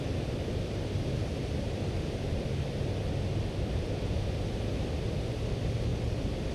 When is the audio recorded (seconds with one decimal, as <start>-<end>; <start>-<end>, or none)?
0.0-6.5